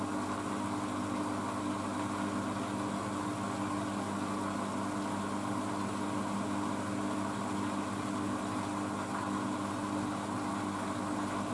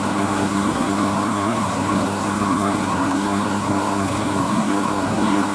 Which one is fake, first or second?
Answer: second